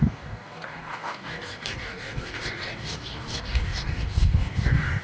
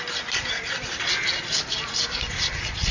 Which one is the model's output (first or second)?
first